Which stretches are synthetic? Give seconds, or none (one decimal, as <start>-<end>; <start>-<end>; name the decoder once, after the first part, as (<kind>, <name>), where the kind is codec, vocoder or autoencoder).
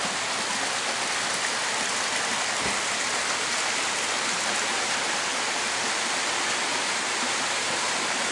none